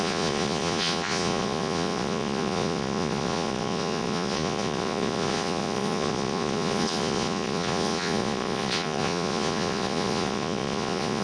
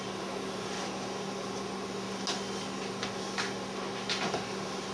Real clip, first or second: second